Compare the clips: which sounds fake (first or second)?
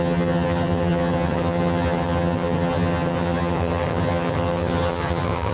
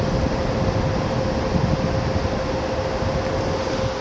first